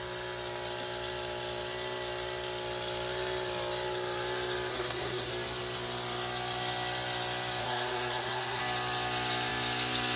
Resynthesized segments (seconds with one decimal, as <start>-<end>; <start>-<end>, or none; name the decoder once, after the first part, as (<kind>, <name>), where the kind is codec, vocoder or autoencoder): 4.7-5.3 (codec, SNAC); 7.6-8.6